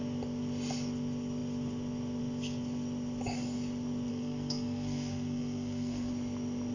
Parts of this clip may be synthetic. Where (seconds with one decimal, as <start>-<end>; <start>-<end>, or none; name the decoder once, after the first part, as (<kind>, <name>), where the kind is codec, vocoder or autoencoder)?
4.1-6.1 (codec, SNAC)